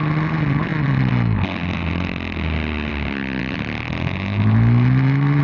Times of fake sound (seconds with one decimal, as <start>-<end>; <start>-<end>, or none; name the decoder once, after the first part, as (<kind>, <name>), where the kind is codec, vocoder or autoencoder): none